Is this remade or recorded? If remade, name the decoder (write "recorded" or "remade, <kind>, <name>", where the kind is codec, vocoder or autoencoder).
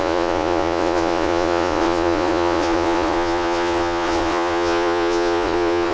remade, vocoder, Vocos